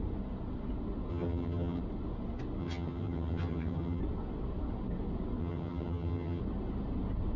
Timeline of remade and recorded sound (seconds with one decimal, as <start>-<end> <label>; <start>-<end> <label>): 0.0-1.1 recorded; 1.1-1.8 remade; 1.8-2.6 recorded; 2.6-4.0 remade; 4.0-5.4 recorded; 5.4-6.4 remade; 6.4-7.4 recorded